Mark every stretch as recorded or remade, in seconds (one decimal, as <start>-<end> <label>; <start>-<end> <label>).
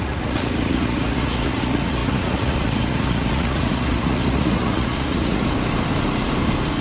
0.0-5.4 remade; 5.4-6.8 recorded